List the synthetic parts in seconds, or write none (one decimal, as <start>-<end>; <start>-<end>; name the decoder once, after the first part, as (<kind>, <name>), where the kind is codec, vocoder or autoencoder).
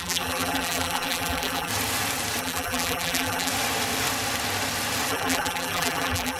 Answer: 0.0-1.7 (vocoder, BigVGAN v2); 2.4-3.5; 5.1-6.4